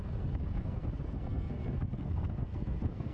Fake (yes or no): yes